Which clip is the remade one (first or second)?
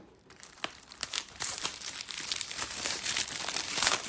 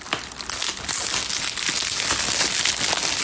first